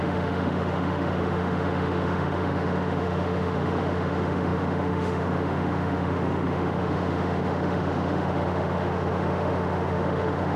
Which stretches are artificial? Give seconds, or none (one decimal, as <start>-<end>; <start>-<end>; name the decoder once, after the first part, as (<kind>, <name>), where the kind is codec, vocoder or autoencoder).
0.0-10.6 (autoencoder, DAC-VAE)